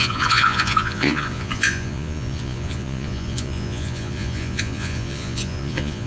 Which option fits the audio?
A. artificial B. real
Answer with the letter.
A